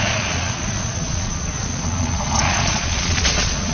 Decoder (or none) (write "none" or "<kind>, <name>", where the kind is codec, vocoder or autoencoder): vocoder, Vocos